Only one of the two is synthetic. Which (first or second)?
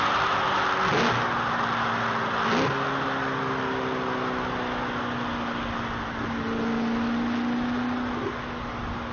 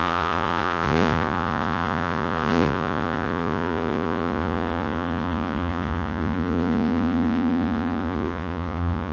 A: second